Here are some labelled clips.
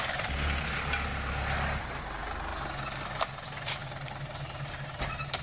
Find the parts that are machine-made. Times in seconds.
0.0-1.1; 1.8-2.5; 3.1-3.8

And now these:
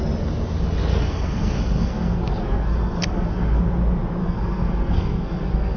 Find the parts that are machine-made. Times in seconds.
0.9-3.6; 4.2-5.8

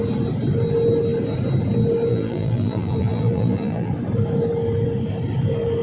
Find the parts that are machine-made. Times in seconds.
2.1-3.9

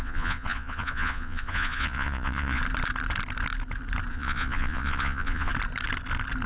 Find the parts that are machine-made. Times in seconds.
0.0-2.6; 4.1-5.5

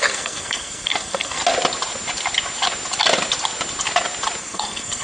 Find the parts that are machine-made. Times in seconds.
0.0-1.4; 4.4-5.0

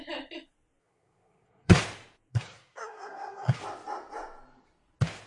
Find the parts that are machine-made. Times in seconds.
0.8-1.8; 2.3-3.6